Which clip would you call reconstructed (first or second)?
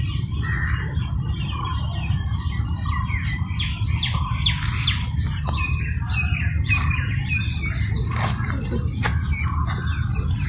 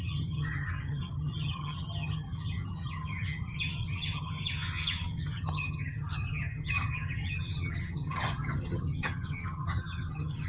second